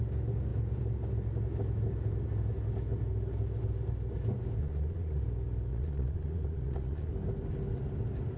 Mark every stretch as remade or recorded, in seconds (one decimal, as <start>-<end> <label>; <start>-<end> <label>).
0.0-4.6 recorded; 4.6-5.2 remade; 5.2-5.7 recorded; 5.7-7.1 remade; 7.1-8.4 recorded